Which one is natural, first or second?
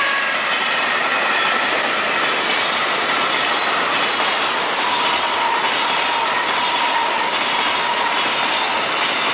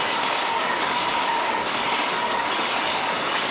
first